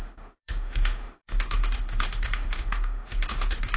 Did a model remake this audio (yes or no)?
yes